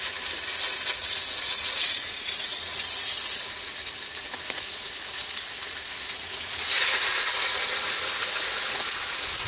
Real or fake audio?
fake